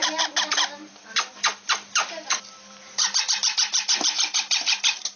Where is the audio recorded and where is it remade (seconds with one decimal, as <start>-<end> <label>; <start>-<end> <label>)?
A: 0.0-5.2 remade